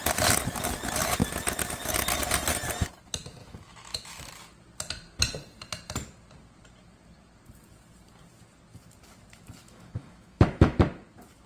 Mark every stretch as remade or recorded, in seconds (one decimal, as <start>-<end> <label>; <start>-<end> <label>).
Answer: 0.0-3.4 recorded; 3.4-4.3 remade; 4.3-9.6 recorded; 9.6-10.8 remade; 10.8-11.5 recorded